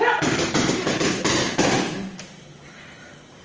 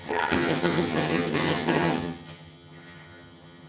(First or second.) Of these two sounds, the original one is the first